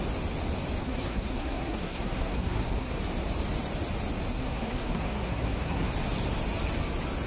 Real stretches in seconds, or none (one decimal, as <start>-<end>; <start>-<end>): 0.0-0.8; 3.0-4.3; 5.9-7.3